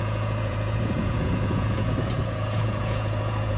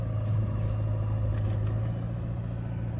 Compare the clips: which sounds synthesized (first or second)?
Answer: first